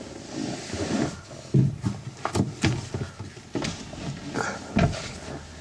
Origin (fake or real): real